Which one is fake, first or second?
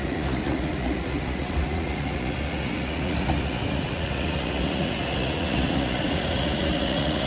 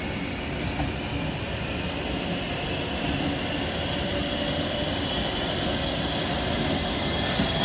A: first